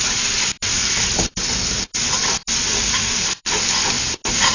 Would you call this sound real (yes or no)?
no